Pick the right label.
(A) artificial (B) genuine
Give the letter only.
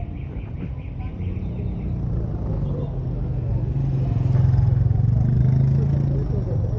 B